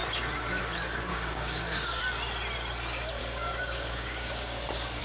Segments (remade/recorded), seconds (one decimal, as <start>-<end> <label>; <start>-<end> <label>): 0.0-1.1 recorded; 1.1-2.0 remade; 2.0-3.2 recorded; 3.2-5.0 remade